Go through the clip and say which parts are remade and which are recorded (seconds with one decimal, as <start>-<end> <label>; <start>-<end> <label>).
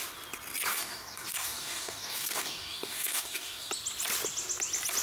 0.0-0.7 recorded; 0.7-3.7 remade; 3.7-5.0 recorded